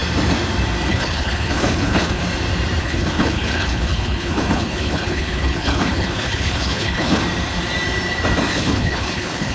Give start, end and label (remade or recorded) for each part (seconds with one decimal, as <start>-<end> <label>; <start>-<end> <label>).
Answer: 0.0-0.9 recorded; 0.9-2.2 remade; 2.2-2.8 recorded; 2.8-7.2 remade; 7.2-8.5 recorded; 8.5-9.5 remade